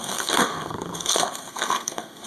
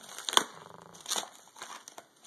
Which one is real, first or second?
second